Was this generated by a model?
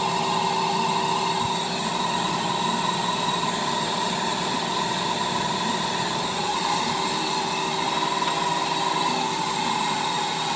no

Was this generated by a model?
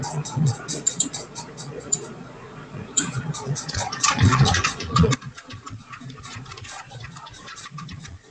yes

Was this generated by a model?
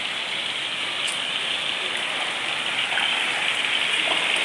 no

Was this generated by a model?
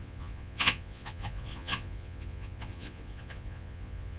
yes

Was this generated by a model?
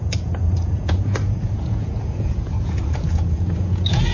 yes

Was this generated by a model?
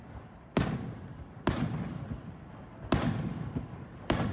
no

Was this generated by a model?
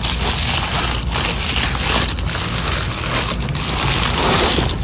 no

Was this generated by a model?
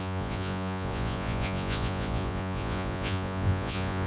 yes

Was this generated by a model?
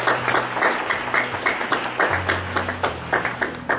no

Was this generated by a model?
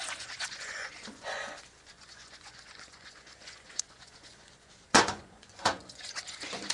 yes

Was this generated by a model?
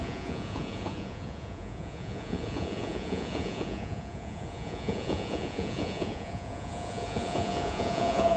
yes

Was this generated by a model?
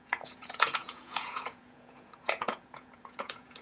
yes